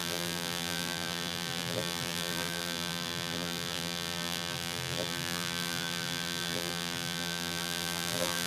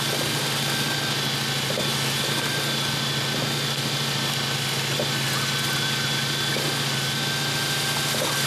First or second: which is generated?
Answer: first